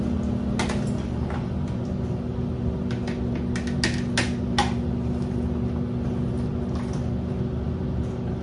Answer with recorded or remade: recorded